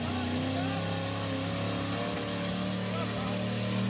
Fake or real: real